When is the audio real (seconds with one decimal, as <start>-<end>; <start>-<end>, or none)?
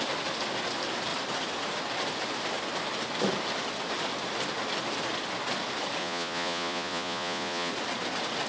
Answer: 0.0-6.0; 7.7-8.5